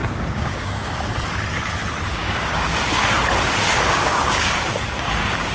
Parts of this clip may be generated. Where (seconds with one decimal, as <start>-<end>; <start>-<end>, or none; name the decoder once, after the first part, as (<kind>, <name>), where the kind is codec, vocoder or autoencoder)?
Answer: 0.0-1.1 (codec, DAC); 2.1-2.8; 3.7-5.5